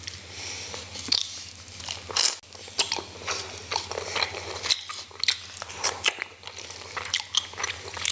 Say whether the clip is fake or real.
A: real